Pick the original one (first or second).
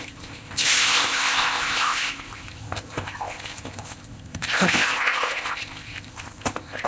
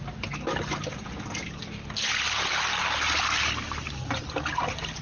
second